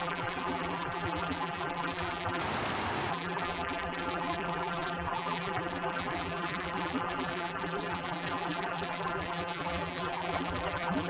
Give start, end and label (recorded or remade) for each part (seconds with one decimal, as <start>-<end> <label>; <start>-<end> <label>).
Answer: 0.0-2.4 remade; 2.4-3.1 recorded; 3.1-11.1 remade